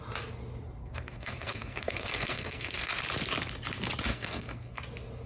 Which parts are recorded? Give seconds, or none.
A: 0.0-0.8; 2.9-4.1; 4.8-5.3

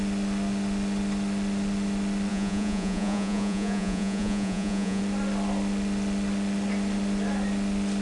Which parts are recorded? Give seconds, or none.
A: 0.0-2.3; 5.0-8.0

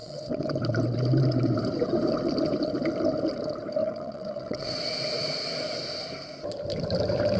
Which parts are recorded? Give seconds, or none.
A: 0.5-3.8; 4.7-7.4

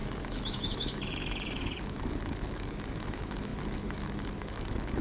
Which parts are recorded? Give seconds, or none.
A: none

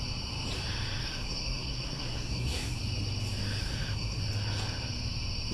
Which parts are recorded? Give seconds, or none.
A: 0.0-1.0; 2.8-3.6; 4.2-5.5

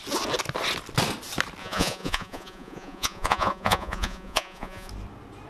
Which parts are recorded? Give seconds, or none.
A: 0.0-1.6; 4.9-5.5

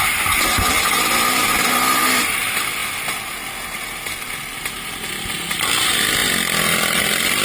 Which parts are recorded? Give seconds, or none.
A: 0.0-7.4